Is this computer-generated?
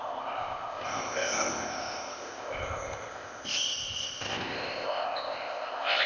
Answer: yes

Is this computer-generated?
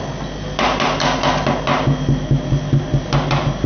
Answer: no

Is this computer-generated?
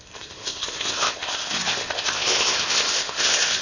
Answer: yes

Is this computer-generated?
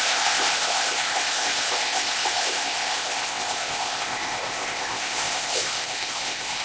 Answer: yes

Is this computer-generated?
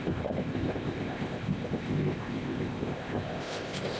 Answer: yes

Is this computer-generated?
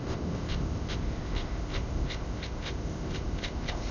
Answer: yes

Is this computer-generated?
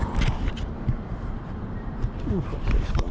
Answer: no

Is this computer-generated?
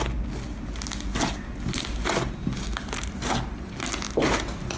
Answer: no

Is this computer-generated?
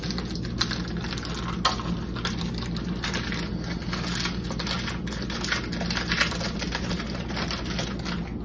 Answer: no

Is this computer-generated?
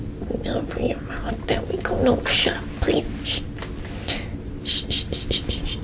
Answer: no